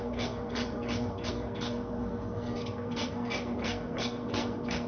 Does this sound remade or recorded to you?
remade